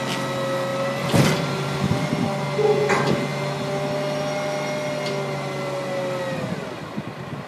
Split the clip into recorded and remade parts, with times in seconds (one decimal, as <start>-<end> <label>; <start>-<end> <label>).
0.0-7.5 recorded